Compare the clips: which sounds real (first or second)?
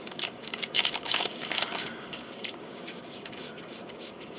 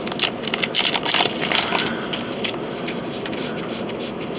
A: second